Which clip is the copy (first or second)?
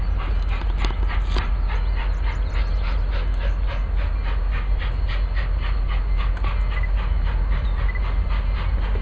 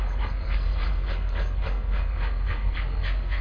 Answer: second